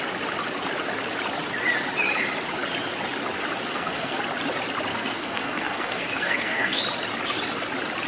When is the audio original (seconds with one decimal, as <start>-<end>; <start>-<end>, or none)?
0.0-3.7; 4.2-4.9; 6.8-8.1